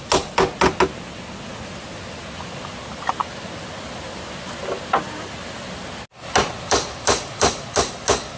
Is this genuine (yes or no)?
yes